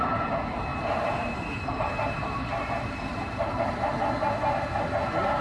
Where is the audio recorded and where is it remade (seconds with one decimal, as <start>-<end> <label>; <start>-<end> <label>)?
0.0-0.7 recorded; 0.7-3.9 remade; 3.9-5.4 recorded

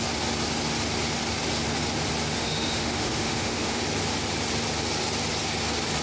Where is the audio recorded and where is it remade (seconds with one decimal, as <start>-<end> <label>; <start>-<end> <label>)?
0.0-2.4 recorded; 2.4-3.8 remade; 3.8-6.0 recorded

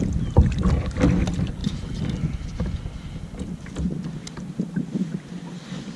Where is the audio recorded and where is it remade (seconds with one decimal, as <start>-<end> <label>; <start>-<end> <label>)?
0.0-4.2 recorded; 4.2-4.8 remade; 4.8-6.0 recorded